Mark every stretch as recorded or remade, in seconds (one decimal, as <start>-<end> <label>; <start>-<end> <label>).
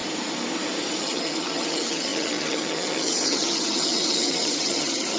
0.0-1.0 recorded; 1.0-5.2 remade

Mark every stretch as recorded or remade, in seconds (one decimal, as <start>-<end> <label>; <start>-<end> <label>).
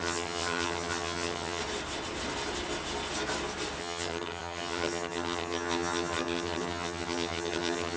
0.0-1.6 remade; 1.6-3.8 recorded; 3.8-8.0 remade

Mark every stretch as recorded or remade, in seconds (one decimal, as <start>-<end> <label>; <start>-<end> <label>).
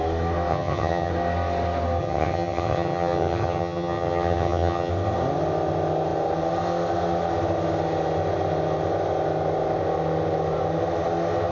0.0-0.5 recorded; 0.5-1.1 remade; 1.1-2.0 recorded; 2.0-4.9 remade; 4.9-11.5 recorded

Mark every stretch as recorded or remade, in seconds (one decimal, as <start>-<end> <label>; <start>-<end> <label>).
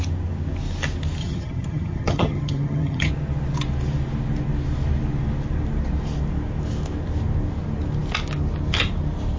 0.0-1.2 recorded; 1.2-3.1 remade; 3.1-9.4 recorded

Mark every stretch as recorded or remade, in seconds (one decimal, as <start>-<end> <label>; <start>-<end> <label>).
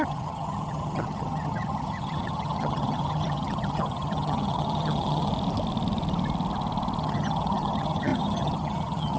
0.0-5.3 remade; 5.3-7.0 recorded; 7.0-9.2 remade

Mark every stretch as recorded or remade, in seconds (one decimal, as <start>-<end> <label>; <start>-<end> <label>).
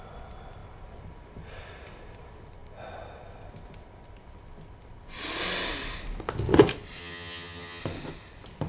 0.0-7.0 recorded; 7.0-7.8 remade; 7.8-8.7 recorded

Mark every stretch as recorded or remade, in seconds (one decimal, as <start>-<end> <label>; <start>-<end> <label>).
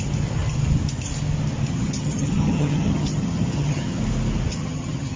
0.0-1.7 recorded; 1.7-4.0 remade; 4.0-4.5 recorded; 4.5-5.2 remade